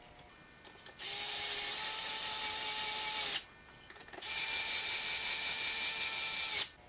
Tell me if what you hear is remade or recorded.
recorded